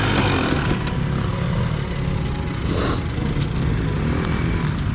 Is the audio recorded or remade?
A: recorded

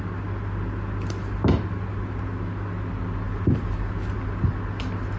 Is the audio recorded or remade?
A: recorded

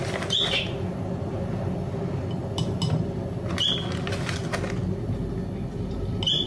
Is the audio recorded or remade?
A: recorded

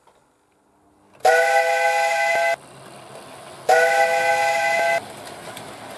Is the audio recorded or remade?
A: recorded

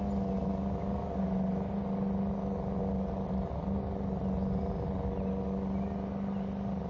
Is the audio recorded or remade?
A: recorded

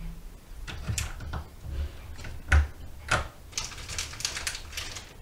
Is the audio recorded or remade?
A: recorded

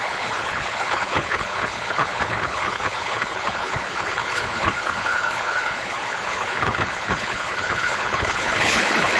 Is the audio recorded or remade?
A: remade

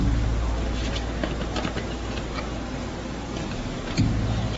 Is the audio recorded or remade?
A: recorded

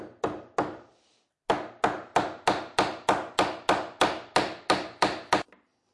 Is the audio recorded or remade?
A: recorded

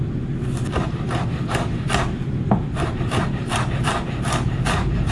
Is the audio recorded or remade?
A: remade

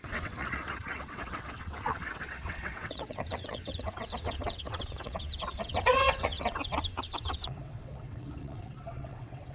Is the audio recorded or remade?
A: remade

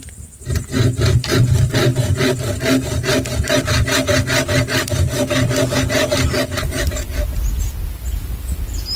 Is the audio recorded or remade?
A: recorded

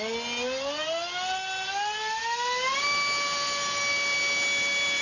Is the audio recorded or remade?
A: recorded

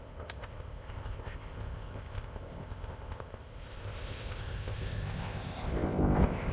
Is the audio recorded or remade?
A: remade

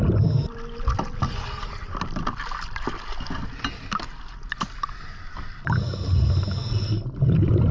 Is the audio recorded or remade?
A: recorded